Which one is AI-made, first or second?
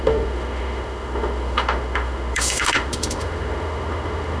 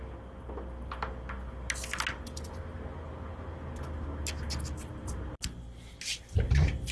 first